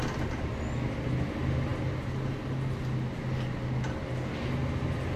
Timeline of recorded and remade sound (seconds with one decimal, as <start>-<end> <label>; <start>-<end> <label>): 0.0-5.2 recorded